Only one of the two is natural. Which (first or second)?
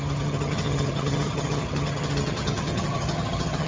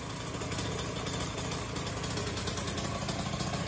second